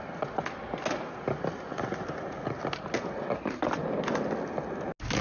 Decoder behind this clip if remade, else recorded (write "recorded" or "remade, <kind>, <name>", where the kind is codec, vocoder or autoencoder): recorded